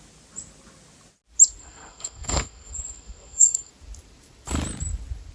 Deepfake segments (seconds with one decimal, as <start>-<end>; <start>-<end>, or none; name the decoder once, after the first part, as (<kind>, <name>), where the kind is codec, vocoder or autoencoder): 1.6-3.7 (codec, SNAC)